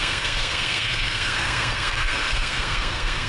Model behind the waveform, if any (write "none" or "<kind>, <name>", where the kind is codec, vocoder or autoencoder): codec, SNAC